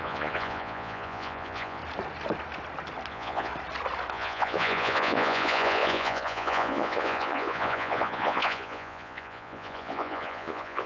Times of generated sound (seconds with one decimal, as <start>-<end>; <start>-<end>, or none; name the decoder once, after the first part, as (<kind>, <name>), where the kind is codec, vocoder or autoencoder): 0.0-1.8 (vocoder, Vocos); 3.1-3.5; 4.1-10.9